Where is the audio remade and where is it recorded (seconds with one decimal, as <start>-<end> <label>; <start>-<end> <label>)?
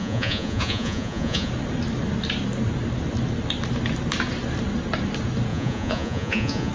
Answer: 0.0-1.5 remade; 1.5-5.5 recorded; 5.5-6.7 remade